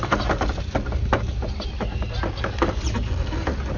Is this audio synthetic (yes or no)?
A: yes